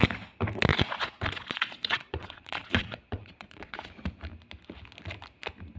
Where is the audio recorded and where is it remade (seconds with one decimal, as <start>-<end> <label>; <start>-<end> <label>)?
0.0-0.7 recorded; 0.7-3.9 remade; 3.9-5.8 recorded